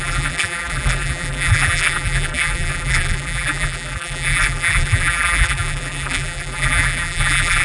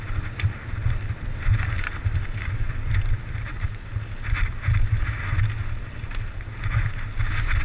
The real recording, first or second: second